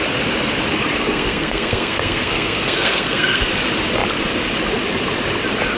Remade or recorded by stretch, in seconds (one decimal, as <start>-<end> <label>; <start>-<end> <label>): 0.0-0.9 recorded; 0.9-3.5 remade; 3.5-5.8 recorded